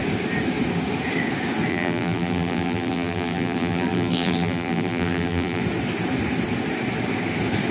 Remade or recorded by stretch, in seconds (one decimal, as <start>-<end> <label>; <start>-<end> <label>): 0.0-1.7 recorded; 1.7-5.6 remade; 5.6-7.7 recorded